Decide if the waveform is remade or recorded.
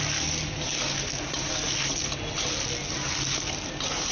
recorded